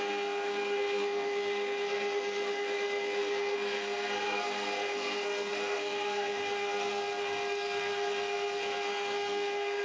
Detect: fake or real fake